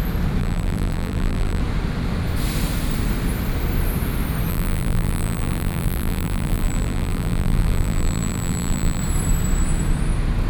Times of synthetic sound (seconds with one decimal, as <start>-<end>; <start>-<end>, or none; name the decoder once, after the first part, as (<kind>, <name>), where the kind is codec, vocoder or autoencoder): 0.4-1.6 (vocoder, BigVGAN v2); 4.5-9.0